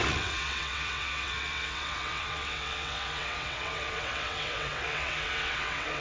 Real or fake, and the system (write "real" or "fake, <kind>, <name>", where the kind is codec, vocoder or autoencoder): fake, vocoder, WaveNeXt